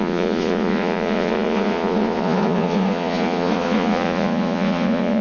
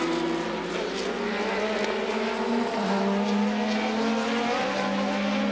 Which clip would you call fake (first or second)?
first